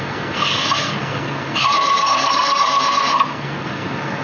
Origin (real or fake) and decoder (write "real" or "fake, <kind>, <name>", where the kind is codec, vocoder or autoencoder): fake, codec, SNAC